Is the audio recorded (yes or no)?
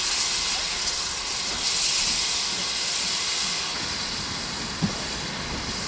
yes